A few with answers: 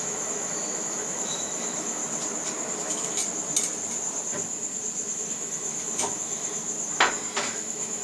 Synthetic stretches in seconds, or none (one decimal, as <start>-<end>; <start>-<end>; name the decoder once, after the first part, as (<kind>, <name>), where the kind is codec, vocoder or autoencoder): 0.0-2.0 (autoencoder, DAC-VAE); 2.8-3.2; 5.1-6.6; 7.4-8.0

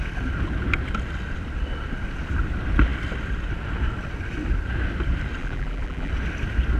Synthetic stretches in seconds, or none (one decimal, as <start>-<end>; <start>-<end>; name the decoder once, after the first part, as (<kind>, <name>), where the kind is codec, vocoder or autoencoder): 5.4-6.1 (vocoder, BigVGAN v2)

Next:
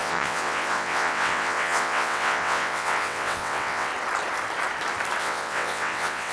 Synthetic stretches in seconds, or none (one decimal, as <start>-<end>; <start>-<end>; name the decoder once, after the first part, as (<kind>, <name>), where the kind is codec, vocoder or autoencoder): 0.0-3.9 (vocoder, WaveNeXt); 5.2-6.3